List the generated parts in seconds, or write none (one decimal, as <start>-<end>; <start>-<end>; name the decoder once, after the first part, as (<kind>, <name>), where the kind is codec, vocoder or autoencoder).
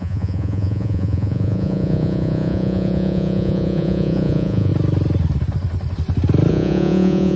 0.0-4.7 (vocoder, Vocos); 6.5-7.4